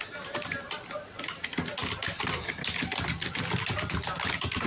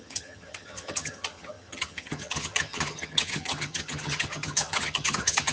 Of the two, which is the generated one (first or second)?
second